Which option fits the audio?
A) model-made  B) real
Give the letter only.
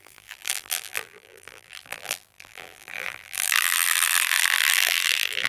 A